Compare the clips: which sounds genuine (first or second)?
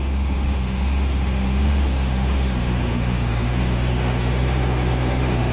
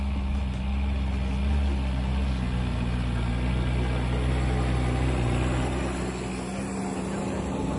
second